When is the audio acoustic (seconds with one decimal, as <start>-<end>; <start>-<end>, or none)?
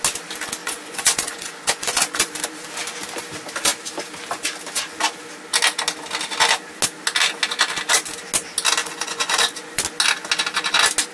0.0-0.6; 2.3-8.8; 9.8-11.1